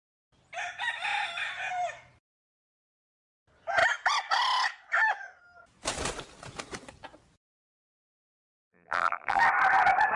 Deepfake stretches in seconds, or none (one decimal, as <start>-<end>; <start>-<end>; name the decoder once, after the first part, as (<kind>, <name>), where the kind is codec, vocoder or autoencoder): 8.7-9.4 (vocoder, BigVGAN v2)